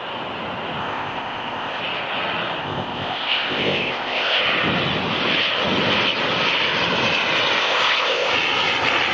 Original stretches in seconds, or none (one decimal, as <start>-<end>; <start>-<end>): 0.0-0.8; 1.8-2.6; 4.4-7.6; 8.3-9.1